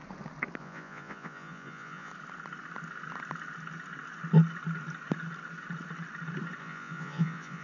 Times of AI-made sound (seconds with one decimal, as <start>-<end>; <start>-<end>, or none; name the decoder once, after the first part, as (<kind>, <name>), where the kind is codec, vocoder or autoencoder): 0.6-2.1 (vocoder, Vocos); 6.6-7.6